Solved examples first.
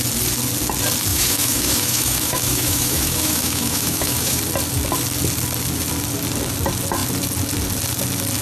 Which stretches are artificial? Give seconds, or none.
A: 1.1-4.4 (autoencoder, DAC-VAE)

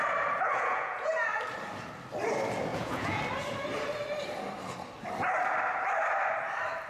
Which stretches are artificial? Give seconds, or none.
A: 0.5-1.1 (vocoder, Vocos); 2.7-3.2

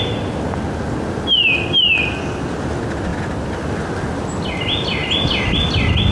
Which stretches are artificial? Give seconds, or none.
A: none

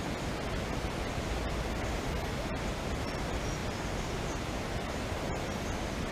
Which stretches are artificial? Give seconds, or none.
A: none

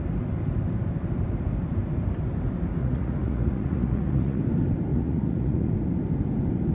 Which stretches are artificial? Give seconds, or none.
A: 2.8-4.4 (vocoder, Vocos); 4.9-5.7